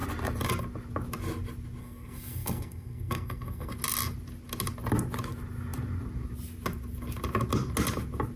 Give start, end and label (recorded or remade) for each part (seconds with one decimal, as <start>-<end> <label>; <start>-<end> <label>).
0.0-1.8 recorded; 1.8-3.7 remade; 3.7-8.4 recorded